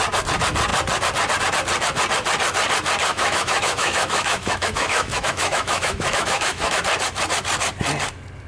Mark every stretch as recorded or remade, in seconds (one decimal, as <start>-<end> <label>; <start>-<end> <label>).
0.0-3.1 recorded; 3.1-6.8 remade; 6.8-8.5 recorded